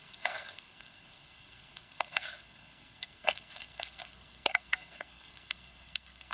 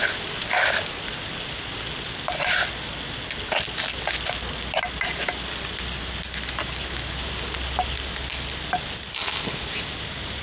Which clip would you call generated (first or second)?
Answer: first